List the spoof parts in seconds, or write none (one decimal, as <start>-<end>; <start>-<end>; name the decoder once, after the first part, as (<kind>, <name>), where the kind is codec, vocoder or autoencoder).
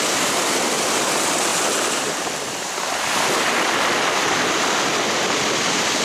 none